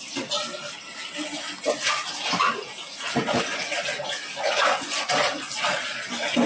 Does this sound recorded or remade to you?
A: recorded